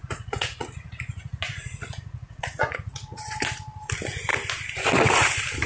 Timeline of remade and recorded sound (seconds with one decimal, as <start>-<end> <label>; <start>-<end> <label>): 0.0-3.4 remade; 3.4-5.7 recorded

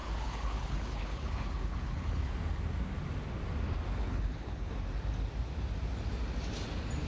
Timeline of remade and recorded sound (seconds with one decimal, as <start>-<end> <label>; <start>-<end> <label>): 0.0-2.3 remade; 2.3-4.0 recorded; 4.0-4.7 remade; 4.7-7.1 recorded

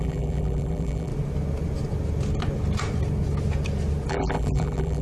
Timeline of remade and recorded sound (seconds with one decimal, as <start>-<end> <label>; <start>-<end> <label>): 0.0-1.1 remade; 1.1-4.1 recorded; 4.1-5.0 remade

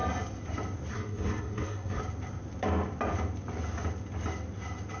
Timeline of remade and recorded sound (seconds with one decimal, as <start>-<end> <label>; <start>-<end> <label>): 0.0-0.9 recorded; 0.9-2.0 remade; 2.0-5.0 recorded

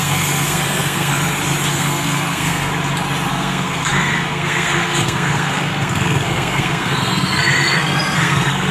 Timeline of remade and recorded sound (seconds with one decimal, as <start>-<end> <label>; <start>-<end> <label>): 0.0-1.1 remade; 1.1-1.7 recorded; 1.7-2.7 remade; 2.7-3.3 recorded; 3.3-8.7 remade

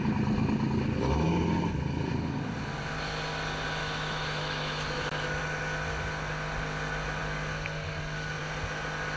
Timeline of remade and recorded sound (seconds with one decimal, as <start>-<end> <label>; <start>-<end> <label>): 0.0-3.8 recorded; 3.8-5.4 remade; 5.4-9.2 recorded